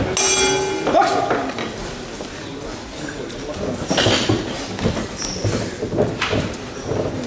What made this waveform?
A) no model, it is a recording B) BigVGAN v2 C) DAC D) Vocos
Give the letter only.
A